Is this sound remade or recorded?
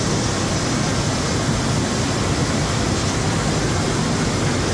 recorded